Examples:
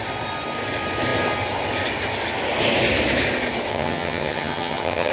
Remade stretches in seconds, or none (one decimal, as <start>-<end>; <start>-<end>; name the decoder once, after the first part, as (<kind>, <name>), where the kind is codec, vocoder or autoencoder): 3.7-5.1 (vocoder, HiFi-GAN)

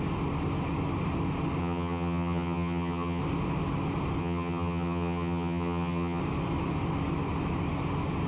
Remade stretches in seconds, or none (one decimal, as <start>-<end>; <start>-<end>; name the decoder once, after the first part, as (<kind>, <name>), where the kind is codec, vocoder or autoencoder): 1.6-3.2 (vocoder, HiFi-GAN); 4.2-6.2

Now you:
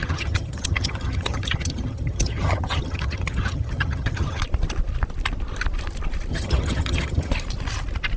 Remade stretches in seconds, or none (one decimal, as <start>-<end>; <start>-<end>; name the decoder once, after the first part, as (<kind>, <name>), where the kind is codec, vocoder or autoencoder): 0.0-4.4 (vocoder, HiFi-GAN); 6.3-7.3